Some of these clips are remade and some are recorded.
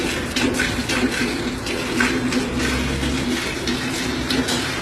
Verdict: recorded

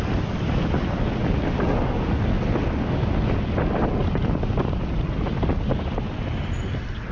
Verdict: recorded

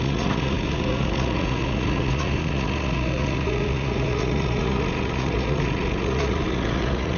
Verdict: remade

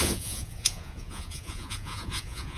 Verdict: remade